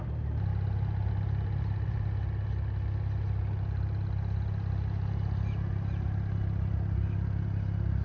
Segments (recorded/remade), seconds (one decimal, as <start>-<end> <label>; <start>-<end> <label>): 0.0-8.0 recorded